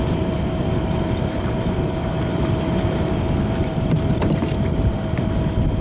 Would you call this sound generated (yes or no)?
yes